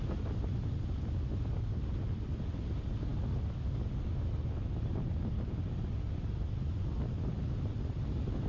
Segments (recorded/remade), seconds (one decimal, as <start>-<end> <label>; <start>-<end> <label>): 0.0-8.5 recorded